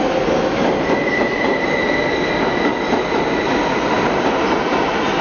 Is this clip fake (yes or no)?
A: no